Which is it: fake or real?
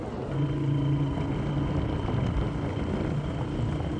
real